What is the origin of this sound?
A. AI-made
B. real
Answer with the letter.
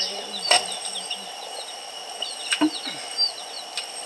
B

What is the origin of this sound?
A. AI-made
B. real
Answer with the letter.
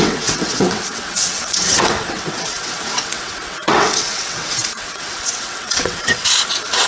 A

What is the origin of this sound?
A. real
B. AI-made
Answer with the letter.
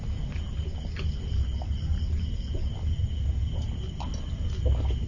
A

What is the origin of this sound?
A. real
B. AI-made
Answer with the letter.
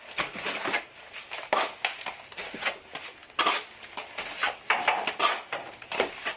A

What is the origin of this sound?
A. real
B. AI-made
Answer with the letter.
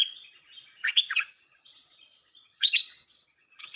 B